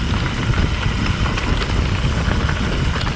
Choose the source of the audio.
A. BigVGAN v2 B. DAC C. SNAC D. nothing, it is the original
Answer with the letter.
D